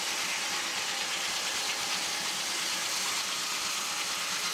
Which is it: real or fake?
real